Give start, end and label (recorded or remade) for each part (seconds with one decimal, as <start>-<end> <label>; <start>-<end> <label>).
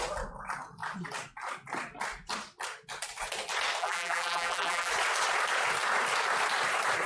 0.0-3.8 recorded; 3.8-4.9 remade; 4.9-7.1 recorded